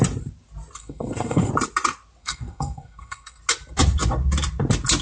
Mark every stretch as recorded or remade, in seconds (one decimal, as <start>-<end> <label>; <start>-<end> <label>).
0.0-0.8 recorded; 0.8-1.5 remade; 1.5-2.2 recorded; 2.2-3.4 remade; 3.4-5.0 recorded